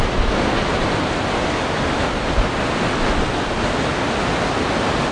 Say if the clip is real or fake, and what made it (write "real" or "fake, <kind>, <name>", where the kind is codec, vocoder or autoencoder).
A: real